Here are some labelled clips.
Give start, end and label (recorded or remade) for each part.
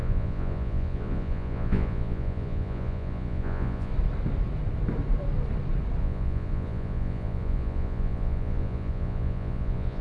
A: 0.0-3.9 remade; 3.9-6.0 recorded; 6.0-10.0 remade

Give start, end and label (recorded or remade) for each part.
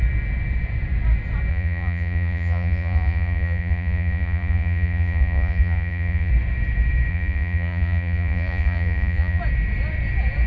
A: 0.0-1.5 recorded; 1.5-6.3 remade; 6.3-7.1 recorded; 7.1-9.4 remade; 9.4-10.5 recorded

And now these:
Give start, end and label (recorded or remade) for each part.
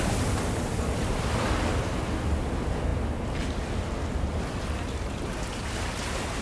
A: 0.0-6.4 recorded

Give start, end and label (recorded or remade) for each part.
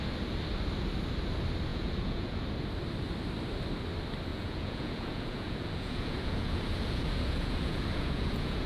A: 0.0-1.7 recorded; 1.7-2.3 remade; 2.3-4.3 recorded; 4.3-8.7 remade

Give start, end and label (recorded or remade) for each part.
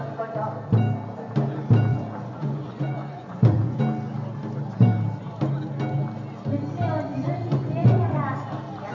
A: 0.0-1.9 recorded; 1.9-3.8 remade; 3.8-7.1 recorded; 7.1-8.2 remade; 8.2-8.9 recorded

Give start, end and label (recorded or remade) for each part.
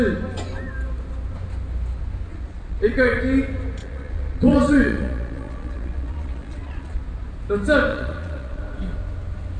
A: 0.0-2.3 recorded; 2.3-3.2 remade; 3.2-3.8 recorded; 3.8-7.0 remade; 7.0-7.9 recorded; 7.9-8.6 remade; 8.6-9.6 recorded